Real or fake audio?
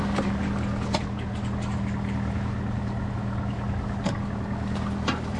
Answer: real